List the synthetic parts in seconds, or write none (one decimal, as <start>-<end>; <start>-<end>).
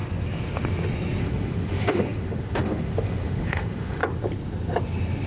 1.2-4.0